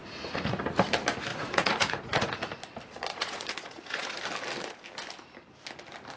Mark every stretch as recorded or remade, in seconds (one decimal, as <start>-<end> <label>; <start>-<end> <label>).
0.0-0.6 remade; 0.6-1.3 recorded; 1.3-2.3 remade; 2.3-3.1 recorded; 3.1-4.2 remade; 4.2-6.2 recorded